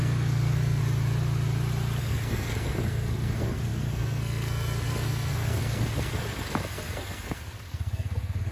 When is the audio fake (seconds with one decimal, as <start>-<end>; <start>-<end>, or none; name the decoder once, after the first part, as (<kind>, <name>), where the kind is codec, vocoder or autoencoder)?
0.0-0.8 (codec, SNAC); 2.0-8.5